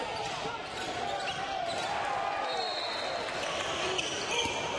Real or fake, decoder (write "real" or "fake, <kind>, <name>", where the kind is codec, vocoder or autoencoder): real